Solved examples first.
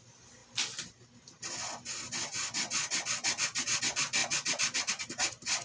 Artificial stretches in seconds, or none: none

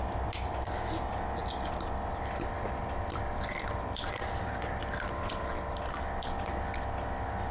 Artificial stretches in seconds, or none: 1.4-5.9 (vocoder, BigVGAN v2)